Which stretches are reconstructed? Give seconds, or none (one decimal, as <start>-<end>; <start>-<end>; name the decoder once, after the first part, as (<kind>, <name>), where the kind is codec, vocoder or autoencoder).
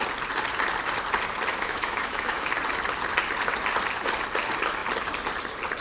1.5-2.5 (autoencoder, DAC-VAE)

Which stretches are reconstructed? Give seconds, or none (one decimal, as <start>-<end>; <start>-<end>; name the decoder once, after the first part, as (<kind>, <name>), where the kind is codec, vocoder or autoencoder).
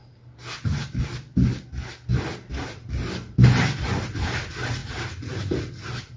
2.6-3.1 (vocoder, BigVGAN v2)